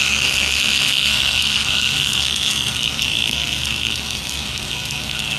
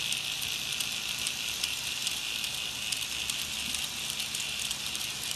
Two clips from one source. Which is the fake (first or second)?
first